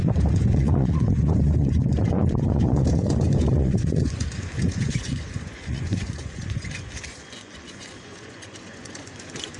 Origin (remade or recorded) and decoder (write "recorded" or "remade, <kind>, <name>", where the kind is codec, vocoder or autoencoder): remade, vocoder, Vocos